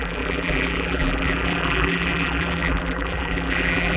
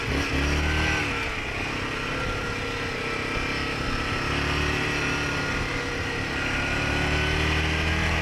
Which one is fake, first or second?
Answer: first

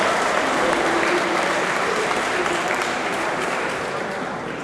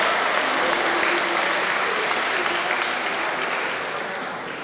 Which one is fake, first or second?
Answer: first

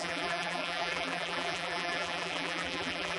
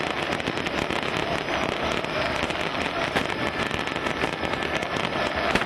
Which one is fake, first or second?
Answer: first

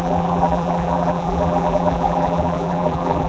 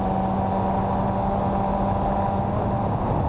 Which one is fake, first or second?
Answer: first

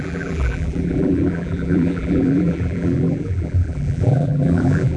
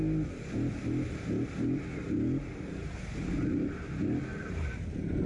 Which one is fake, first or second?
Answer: first